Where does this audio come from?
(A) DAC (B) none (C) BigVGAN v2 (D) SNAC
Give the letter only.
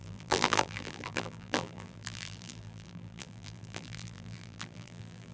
C